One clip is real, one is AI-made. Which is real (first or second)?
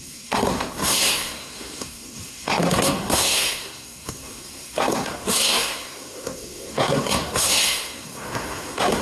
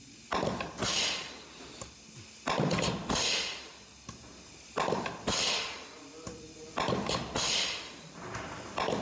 second